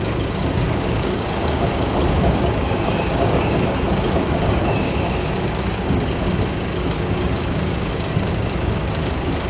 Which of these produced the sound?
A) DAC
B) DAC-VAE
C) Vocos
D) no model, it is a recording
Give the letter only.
A